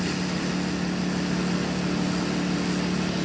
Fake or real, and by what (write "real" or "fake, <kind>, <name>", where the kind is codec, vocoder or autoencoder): real